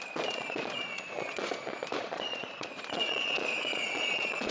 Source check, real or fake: fake